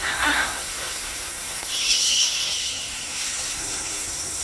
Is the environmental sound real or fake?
fake